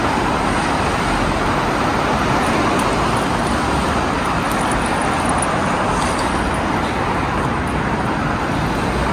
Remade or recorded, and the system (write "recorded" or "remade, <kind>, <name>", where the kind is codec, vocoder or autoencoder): recorded